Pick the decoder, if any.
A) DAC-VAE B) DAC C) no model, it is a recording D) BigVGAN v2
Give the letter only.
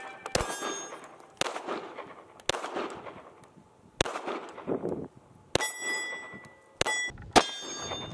C